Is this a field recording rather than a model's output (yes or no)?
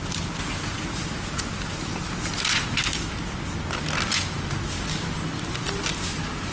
yes